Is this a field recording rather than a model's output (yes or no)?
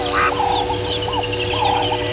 yes